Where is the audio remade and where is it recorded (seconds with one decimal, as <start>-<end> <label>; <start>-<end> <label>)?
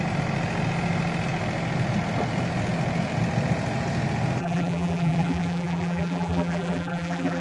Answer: 0.0-4.4 recorded; 4.4-7.4 remade